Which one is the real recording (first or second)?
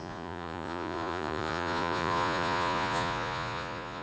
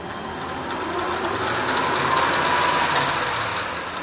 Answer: second